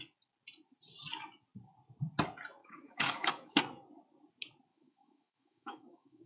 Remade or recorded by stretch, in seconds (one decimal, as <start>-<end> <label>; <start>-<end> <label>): 0.0-2.6 recorded; 2.6-3.6 remade; 3.6-4.7 recorded; 4.7-6.3 remade